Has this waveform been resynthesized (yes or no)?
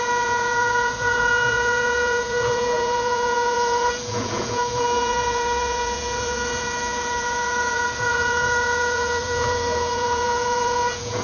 yes